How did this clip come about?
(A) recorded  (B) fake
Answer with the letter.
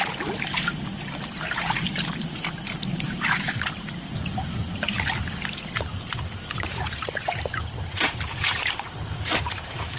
B